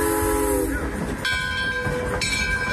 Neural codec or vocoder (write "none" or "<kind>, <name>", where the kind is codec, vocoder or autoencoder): none